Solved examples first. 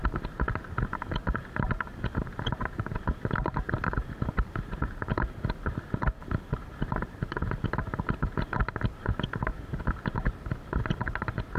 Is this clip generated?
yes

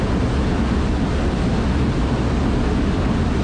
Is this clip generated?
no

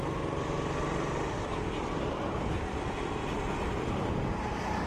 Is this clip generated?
no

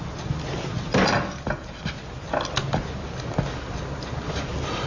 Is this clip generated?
no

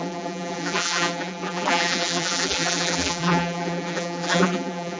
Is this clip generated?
yes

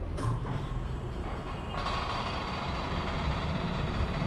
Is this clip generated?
yes